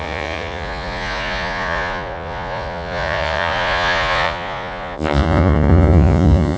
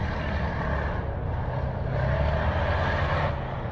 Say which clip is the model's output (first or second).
first